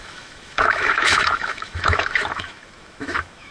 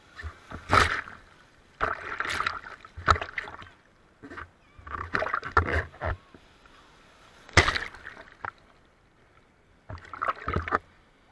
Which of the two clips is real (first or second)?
second